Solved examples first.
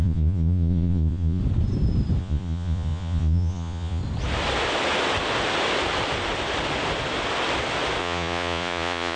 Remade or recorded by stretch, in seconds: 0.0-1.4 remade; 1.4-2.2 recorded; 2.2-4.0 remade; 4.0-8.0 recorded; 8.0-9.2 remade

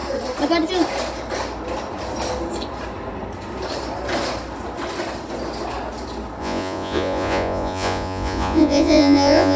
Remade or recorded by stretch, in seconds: 0.0-6.4 recorded; 6.4-9.6 remade

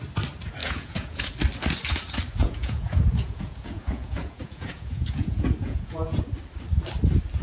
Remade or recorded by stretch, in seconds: 0.0-0.6 recorded; 0.6-1.3 remade; 1.3-2.4 recorded; 2.4-6.2 remade; 6.2-7.4 recorded

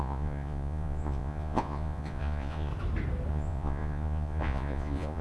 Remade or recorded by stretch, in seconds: 0.0-2.7 remade; 2.7-3.3 recorded; 3.3-5.2 remade

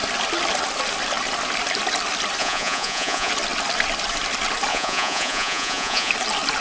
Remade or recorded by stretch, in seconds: 0.0-2.4 recorded; 2.4-3.3 remade; 3.3-4.7 recorded; 4.7-6.1 remade; 6.1-6.6 recorded